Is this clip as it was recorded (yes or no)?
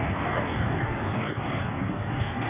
no